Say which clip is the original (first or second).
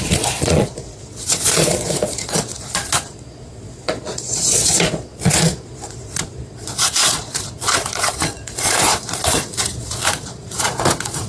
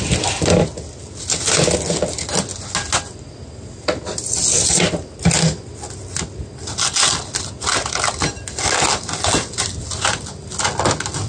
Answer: second